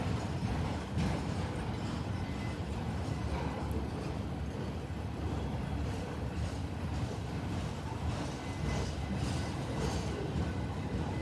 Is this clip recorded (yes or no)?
yes